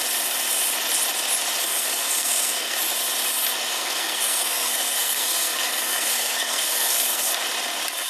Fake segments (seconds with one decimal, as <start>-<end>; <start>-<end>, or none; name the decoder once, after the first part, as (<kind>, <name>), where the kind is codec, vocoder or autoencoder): 1.7-2.8 (codec, SNAC); 3.7-7.3